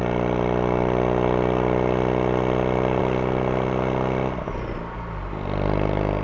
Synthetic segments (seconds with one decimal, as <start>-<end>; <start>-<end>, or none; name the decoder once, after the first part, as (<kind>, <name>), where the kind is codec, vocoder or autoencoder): none